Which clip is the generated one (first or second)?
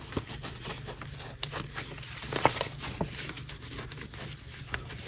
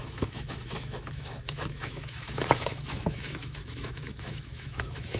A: second